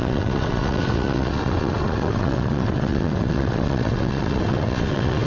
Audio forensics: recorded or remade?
remade